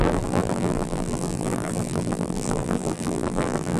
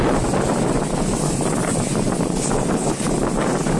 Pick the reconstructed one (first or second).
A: first